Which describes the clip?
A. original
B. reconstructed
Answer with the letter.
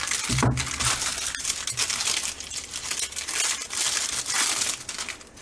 A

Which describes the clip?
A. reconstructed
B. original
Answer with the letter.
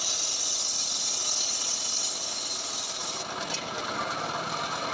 B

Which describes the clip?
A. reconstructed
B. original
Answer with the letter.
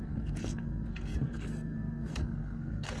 A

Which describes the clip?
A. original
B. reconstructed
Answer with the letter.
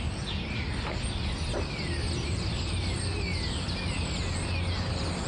A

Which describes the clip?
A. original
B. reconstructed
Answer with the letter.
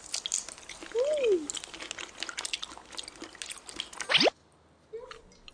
A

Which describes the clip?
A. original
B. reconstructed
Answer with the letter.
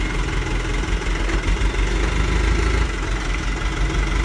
A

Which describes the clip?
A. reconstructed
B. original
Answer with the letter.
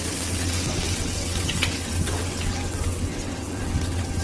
A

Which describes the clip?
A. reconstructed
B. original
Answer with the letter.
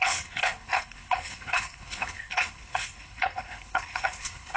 A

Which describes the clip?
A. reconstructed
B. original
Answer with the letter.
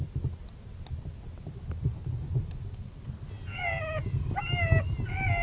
B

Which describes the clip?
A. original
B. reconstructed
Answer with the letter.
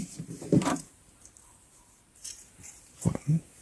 B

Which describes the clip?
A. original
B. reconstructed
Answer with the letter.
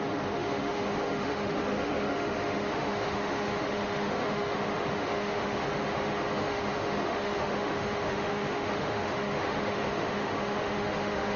B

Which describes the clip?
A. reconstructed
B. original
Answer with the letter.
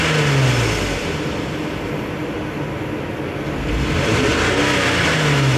B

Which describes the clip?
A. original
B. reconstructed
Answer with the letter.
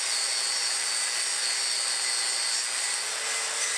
A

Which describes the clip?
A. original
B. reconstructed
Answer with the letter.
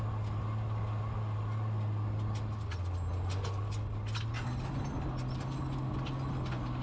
A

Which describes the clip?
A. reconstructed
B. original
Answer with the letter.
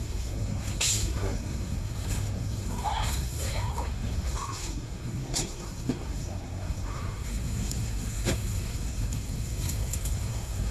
A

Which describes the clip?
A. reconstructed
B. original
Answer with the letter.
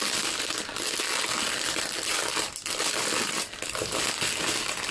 B